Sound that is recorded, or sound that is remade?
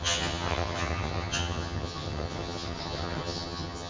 remade